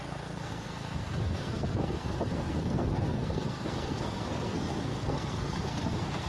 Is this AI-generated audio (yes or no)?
yes